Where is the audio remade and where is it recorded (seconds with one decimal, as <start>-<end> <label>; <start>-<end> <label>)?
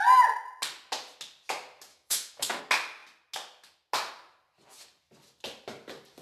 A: 0.0-1.9 recorded; 1.9-2.6 remade; 2.6-6.2 recorded